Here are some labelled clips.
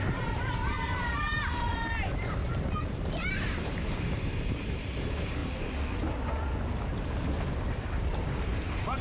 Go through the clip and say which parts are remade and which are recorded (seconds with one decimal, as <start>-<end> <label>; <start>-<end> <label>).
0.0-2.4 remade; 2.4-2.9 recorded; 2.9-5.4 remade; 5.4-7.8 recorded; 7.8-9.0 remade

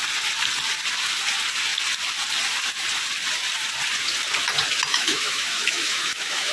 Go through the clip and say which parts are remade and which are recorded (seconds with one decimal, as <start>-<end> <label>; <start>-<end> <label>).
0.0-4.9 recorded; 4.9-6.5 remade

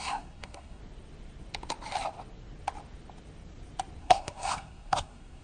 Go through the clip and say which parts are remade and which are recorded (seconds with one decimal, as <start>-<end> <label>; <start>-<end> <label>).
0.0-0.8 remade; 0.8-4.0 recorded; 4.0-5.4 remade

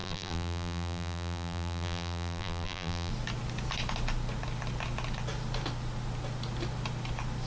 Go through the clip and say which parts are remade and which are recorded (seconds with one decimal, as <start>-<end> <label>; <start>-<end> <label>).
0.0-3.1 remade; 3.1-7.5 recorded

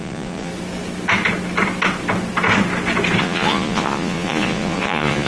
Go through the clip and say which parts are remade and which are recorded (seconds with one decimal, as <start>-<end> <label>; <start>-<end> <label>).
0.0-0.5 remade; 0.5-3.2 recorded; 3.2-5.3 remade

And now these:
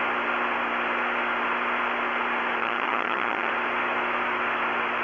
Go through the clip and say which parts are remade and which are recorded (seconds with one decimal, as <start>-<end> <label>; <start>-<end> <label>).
0.0-2.6 recorded; 2.6-3.5 remade; 3.5-5.0 recorded